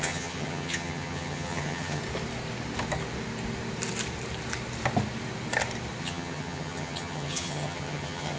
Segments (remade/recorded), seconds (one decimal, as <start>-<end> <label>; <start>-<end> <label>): 0.0-2.0 remade; 2.0-6.0 recorded; 6.0-8.4 remade